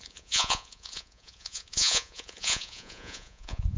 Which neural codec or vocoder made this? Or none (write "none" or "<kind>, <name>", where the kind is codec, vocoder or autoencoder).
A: vocoder, Vocos